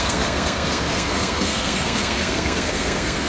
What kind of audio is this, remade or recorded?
remade